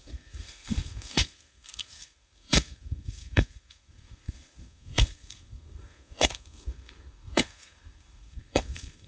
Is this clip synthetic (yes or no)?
yes